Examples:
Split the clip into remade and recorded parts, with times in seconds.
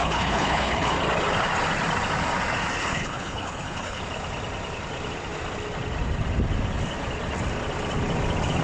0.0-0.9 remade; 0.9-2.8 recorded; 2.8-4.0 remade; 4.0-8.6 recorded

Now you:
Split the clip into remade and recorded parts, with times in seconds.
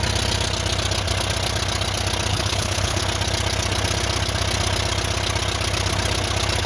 0.0-2.3 recorded; 2.3-3.0 remade; 3.0-6.7 recorded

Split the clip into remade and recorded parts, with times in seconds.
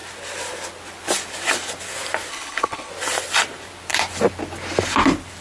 0.0-2.3 recorded; 2.3-2.9 remade; 2.9-5.4 recorded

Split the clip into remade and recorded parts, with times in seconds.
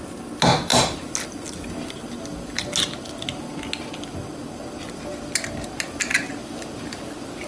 0.0-7.5 recorded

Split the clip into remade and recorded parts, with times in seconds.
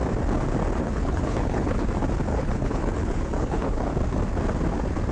0.0-0.8 recorded; 0.8-1.9 remade; 1.9-2.3 recorded; 2.3-3.9 remade; 3.9-5.1 recorded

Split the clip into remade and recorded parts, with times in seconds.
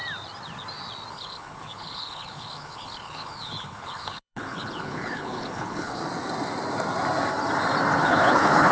0.0-1.1 recorded; 1.1-6.0 remade; 6.0-8.0 recorded; 8.0-8.7 remade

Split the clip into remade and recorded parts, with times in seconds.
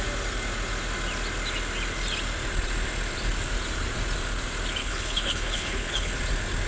0.0-4.8 recorded; 4.8-6.1 remade; 6.1-6.7 recorded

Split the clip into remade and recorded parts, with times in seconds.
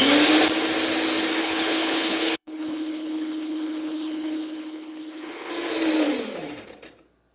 0.0-1.4 recorded; 1.4-5.5 remade; 5.5-7.3 recorded